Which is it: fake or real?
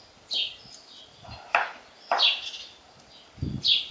real